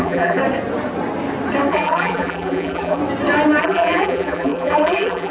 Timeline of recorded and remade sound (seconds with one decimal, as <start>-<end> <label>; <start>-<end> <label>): 0.0-0.4 remade; 0.4-1.7 recorded; 1.7-3.0 remade; 3.0-3.6 recorded; 3.6-5.3 remade